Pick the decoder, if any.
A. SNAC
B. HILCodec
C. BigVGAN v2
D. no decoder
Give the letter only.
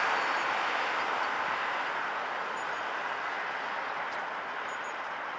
D